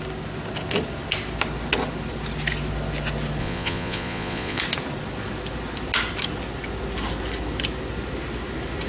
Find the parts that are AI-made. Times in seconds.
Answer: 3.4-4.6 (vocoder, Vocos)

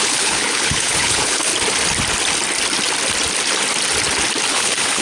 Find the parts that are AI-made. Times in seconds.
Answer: 0.0-1.5 (codec, HILCodec); 4.5-5.0

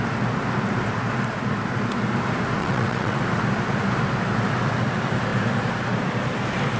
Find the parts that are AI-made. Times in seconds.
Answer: 2.6-3.2 (vocoder, WaveNeXt)

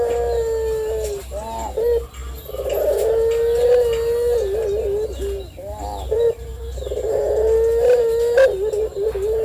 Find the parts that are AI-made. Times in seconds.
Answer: none